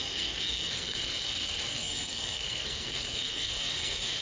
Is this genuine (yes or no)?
no